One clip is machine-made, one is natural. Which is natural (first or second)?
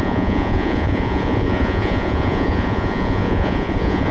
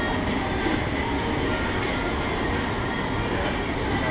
second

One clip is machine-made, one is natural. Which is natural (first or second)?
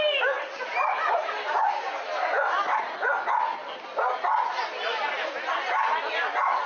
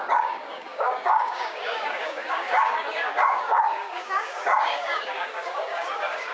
first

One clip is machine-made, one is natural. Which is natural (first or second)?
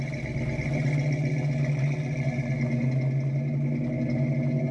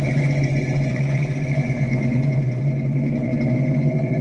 first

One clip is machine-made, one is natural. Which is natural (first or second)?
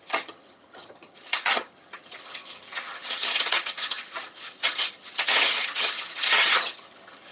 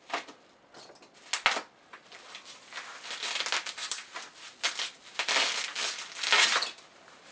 second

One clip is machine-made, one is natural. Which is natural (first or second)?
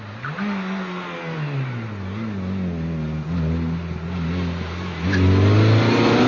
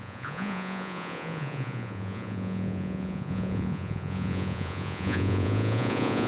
first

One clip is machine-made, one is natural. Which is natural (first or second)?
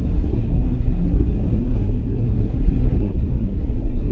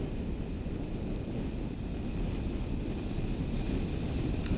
second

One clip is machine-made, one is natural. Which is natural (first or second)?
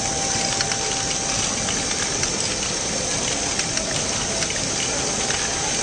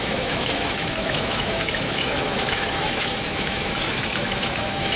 first